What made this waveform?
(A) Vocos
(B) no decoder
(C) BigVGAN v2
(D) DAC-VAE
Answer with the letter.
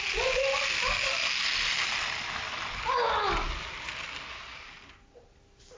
B